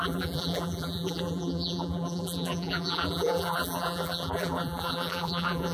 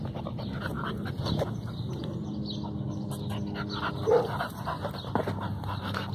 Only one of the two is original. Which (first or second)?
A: second